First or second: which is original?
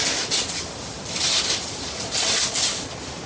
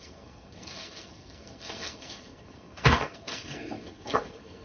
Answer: first